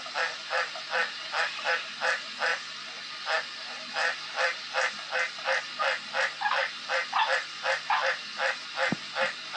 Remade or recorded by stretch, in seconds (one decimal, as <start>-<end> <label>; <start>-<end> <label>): 0.0-9.6 recorded